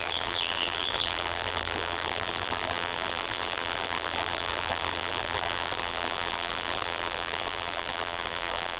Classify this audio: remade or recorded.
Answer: remade